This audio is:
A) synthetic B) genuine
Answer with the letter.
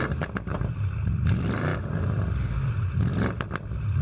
A